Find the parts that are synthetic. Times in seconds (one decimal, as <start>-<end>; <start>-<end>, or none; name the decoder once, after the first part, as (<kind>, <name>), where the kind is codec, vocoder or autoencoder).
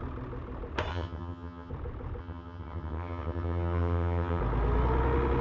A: 0.9-1.7 (vocoder, HiFi-GAN); 2.2-4.4